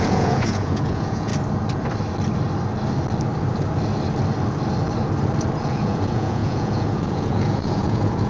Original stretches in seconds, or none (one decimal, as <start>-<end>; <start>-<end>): 1.3-5.7